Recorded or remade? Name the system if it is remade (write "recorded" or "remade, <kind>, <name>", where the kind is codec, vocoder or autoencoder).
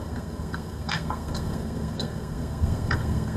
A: remade, codec, SNAC